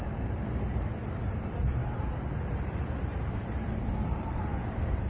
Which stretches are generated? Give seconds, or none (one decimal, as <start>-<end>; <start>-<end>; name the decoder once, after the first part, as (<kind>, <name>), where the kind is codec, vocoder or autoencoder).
0.0-4.5 (vocoder, BigVGAN v2)